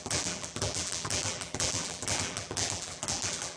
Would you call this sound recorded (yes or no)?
no